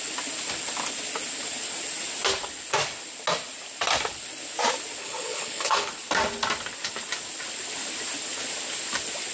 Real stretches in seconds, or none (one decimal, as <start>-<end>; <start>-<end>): 0.0-5.0; 5.9-9.3